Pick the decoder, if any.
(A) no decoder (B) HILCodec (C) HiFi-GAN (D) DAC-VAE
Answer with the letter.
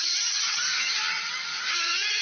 C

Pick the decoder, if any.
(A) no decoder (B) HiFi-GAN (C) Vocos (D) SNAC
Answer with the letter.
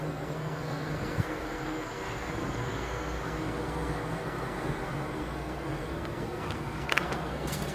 D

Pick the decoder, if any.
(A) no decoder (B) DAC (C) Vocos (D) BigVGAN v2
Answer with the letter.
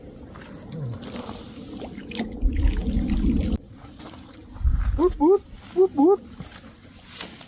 A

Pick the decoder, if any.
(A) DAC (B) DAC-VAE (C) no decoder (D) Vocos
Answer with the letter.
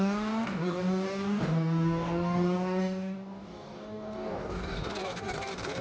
A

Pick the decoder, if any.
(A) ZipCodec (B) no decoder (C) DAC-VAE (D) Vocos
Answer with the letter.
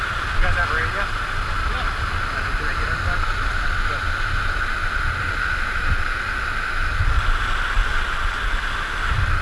B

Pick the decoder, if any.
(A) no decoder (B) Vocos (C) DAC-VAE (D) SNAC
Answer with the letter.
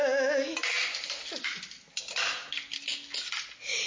A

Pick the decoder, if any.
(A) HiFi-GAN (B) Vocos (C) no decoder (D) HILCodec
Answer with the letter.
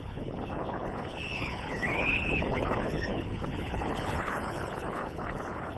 D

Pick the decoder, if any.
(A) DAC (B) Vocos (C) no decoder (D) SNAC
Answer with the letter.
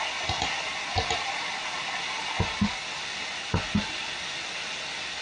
C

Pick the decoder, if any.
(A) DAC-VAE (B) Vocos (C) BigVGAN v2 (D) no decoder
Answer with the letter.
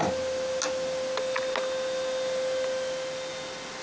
D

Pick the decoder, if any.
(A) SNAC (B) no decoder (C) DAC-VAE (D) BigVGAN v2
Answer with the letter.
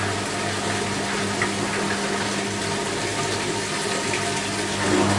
B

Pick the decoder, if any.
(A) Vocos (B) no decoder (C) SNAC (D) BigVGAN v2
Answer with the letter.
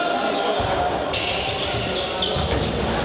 B